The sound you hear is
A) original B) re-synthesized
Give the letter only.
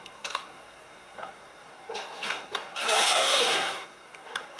B